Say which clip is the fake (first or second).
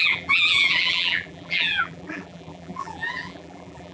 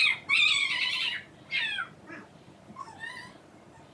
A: first